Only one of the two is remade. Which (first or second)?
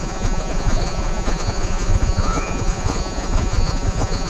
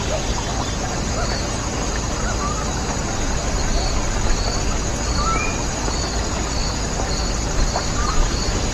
first